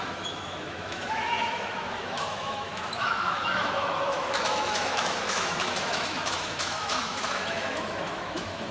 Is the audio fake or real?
fake